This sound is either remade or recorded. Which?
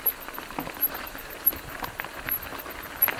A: recorded